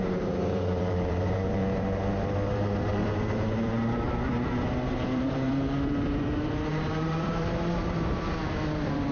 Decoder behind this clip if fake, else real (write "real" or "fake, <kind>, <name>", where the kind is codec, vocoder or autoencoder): fake, vocoder, BigVGAN v2